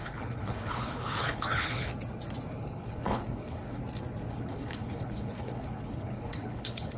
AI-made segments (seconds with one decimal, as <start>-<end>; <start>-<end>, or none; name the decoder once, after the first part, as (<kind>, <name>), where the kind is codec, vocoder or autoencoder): 0.0-1.9 (codec, HILCodec); 2.5-3.8; 4.3-7.0